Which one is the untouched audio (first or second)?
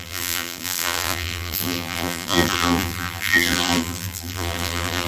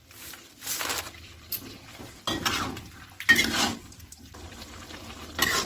second